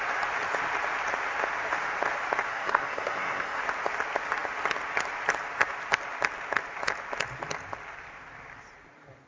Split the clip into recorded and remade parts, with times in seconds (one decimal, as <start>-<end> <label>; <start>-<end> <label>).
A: 0.0-2.5 recorded; 2.5-3.6 remade; 3.6-9.3 recorded